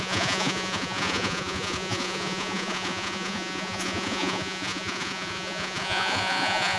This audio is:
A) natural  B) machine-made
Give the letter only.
B